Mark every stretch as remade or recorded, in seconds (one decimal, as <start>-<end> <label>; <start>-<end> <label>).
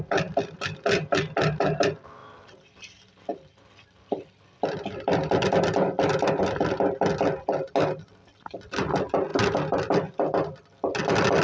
0.0-2.2 recorded; 2.2-6.4 remade; 6.4-11.4 recorded